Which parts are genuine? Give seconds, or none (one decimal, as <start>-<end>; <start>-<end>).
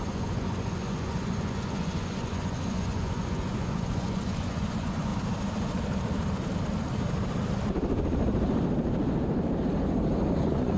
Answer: 5.1-10.4